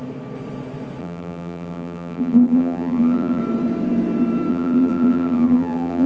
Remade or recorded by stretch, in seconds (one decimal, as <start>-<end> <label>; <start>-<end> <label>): 0.0-1.0 recorded; 1.0-3.4 remade; 3.4-4.5 recorded; 4.5-6.1 remade